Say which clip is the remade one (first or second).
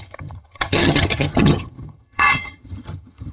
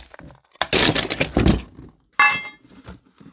first